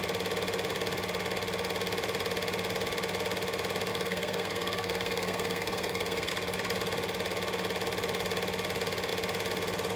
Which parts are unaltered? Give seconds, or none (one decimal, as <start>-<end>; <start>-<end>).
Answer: 0.0-3.9; 6.3-10.0